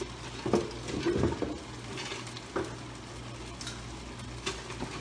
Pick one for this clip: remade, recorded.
recorded